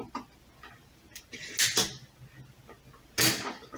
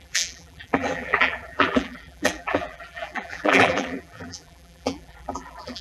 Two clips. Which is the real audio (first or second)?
first